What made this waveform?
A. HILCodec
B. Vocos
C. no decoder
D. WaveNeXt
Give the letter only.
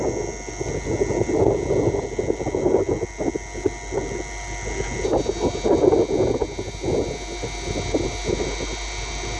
C